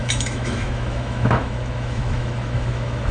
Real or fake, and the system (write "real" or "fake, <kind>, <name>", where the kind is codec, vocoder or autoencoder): fake, autoencoder, DAC-VAE